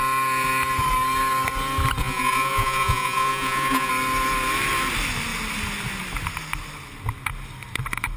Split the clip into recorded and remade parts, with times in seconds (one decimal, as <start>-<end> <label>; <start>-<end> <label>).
0.0-2.0 recorded; 2.0-3.9 remade; 3.9-8.2 recorded